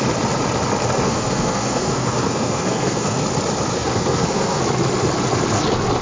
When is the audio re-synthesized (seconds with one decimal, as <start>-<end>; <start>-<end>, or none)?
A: 1.0-3.2; 3.7-4.6

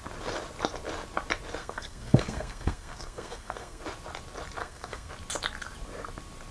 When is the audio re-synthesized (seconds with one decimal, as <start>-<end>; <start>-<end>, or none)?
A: 1.6-3.8; 4.6-5.1

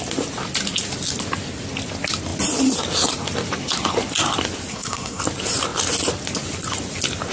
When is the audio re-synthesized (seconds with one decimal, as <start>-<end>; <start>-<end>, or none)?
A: 4.7-5.2

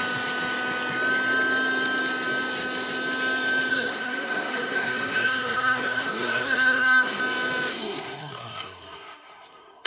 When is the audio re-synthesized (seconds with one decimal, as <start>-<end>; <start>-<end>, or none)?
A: 3.7-7.2; 7.7-9.9

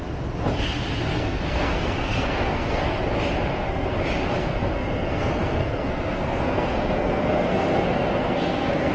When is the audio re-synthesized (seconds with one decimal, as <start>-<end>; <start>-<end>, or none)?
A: 1.1-3.0; 3.5-4.0; 4.4-8.9